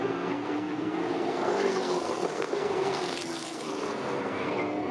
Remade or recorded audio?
remade